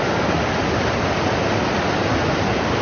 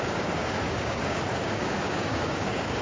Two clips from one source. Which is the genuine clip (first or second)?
first